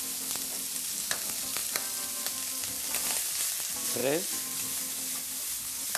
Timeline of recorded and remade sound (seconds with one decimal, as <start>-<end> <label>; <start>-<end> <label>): 0.0-6.0 recorded